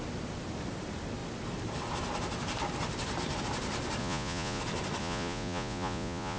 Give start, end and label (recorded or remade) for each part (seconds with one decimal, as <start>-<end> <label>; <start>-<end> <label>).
0.0-4.0 recorded; 4.0-4.6 remade; 4.6-5.0 recorded; 5.0-6.4 remade